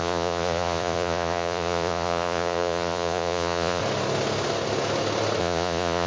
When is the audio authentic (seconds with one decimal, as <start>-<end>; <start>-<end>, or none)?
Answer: 3.8-5.4